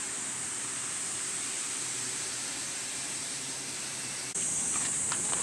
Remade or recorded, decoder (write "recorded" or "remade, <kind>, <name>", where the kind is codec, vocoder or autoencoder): remade, vocoder, BigVGAN v2